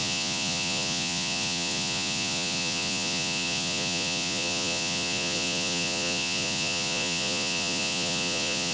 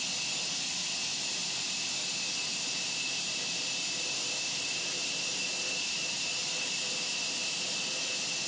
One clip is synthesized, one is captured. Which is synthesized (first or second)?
first